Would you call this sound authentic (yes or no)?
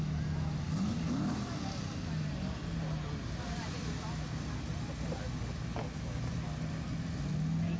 yes